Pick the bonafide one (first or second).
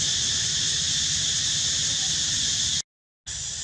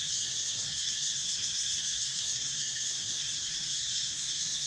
first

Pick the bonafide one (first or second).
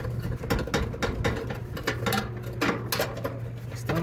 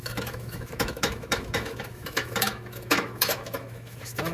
first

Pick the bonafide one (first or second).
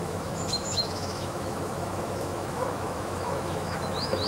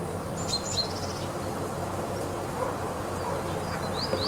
second